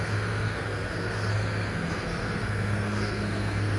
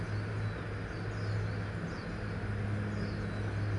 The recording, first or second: second